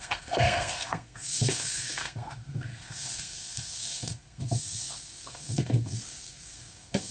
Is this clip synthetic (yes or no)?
yes